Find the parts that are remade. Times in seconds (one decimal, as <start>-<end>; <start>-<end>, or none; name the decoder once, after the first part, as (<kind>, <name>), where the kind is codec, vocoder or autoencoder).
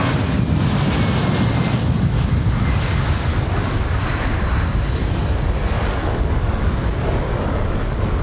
3.3-4.0 (codec, DAC); 5.0-8.2